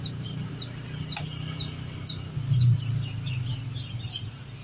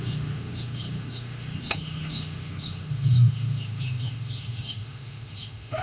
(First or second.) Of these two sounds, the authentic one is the first